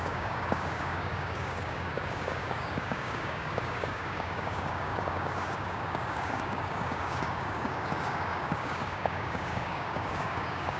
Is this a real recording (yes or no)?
no